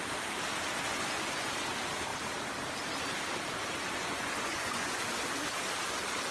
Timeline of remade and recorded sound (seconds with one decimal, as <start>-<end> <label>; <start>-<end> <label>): 0.0-0.9 recorded; 0.9-1.5 remade; 1.5-4.0 recorded; 4.0-5.0 remade; 5.0-6.3 recorded